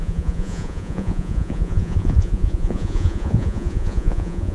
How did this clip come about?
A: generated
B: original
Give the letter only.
A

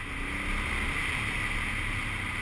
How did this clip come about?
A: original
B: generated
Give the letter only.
A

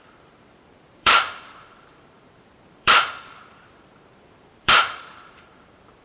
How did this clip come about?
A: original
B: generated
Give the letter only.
B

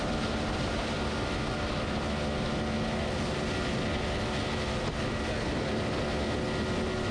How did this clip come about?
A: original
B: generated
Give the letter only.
A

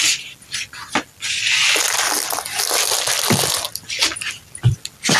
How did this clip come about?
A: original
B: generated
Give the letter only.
A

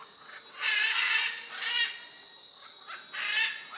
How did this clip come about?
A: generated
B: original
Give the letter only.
B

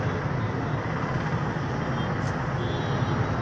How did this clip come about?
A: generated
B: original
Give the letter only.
B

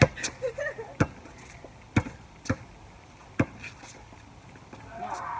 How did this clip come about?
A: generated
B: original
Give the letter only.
B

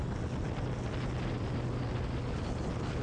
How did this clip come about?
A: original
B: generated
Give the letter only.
A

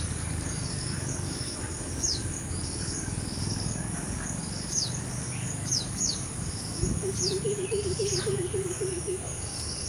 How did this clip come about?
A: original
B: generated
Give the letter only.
B